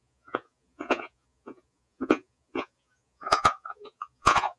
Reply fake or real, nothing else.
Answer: fake